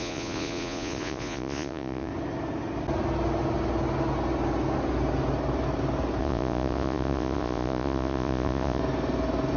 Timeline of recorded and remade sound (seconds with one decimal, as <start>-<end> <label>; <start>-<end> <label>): 0.0-2.1 remade; 2.1-6.2 recorded; 6.2-8.8 remade; 8.8-9.6 recorded